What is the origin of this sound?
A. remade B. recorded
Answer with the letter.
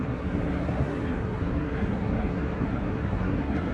A